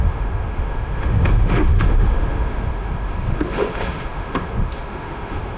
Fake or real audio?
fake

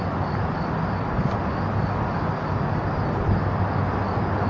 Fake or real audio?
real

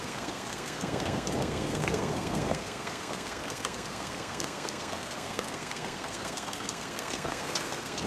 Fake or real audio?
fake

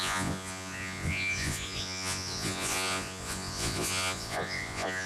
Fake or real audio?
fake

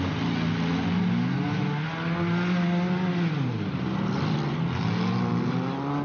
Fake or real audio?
real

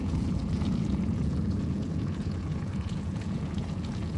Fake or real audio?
fake